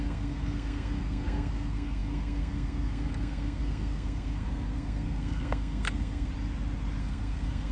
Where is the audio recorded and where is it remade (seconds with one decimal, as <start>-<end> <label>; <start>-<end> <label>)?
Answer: 0.0-6.3 remade; 6.3-7.0 recorded; 7.0-7.7 remade